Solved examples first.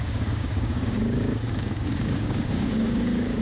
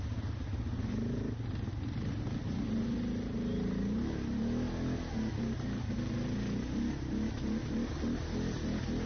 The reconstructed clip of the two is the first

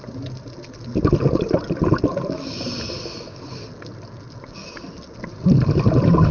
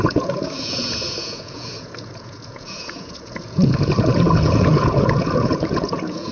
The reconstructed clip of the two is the second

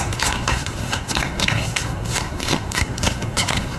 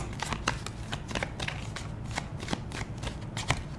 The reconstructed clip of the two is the first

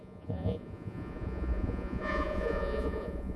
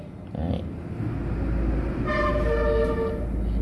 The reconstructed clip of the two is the first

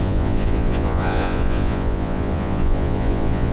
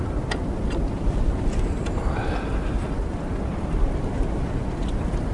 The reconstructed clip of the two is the first